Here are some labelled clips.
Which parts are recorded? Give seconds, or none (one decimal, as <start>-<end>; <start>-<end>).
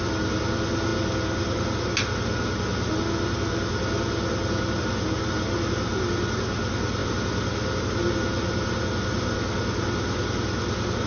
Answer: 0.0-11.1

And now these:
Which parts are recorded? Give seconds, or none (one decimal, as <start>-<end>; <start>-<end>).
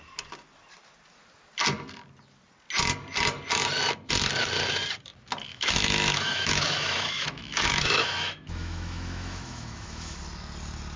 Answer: 0.0-5.5; 10.2-11.0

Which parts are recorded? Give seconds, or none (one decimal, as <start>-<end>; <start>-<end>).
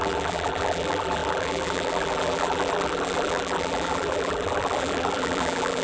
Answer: none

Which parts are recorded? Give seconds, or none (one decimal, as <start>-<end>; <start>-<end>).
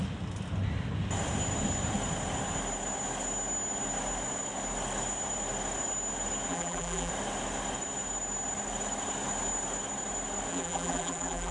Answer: 0.0-6.5; 7.1-10.5